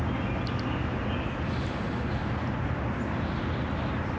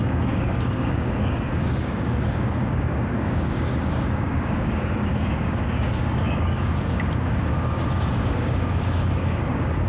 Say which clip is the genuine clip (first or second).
first